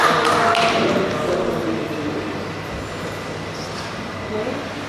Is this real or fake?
real